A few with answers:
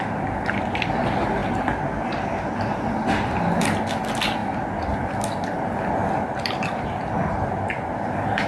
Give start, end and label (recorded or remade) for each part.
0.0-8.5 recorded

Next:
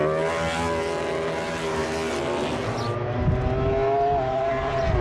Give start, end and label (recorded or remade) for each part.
0.0-5.0 recorded

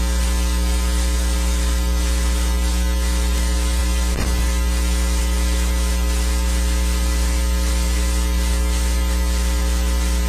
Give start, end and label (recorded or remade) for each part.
0.0-10.3 recorded

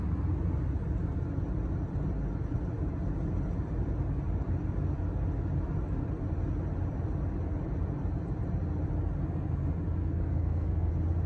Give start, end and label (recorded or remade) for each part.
0.0-10.0 recorded; 10.0-10.9 remade; 10.9-11.3 recorded

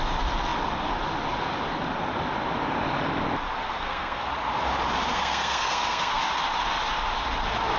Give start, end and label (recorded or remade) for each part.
0.0-3.6 recorded; 3.6-4.3 remade; 4.3-5.1 recorded; 5.1-6.2 remade; 6.2-7.8 recorded

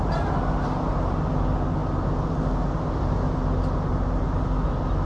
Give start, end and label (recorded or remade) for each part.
0.0-5.1 recorded

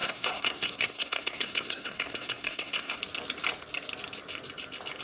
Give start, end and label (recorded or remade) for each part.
0.0-3.0 remade; 3.0-5.0 recorded